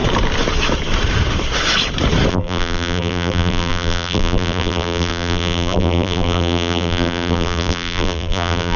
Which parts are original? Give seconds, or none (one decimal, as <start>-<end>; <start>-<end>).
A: 0.0-2.3